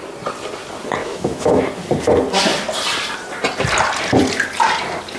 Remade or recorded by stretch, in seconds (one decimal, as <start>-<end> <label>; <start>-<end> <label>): 0.0-1.0 recorded; 1.0-1.7 remade; 1.7-5.2 recorded